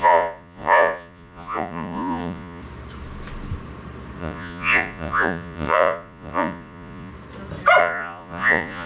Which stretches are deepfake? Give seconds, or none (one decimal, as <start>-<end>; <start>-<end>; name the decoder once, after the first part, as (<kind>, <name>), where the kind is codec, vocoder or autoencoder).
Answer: 0.0-2.6 (vocoder, Vocos); 4.2-7.1; 7.8-8.9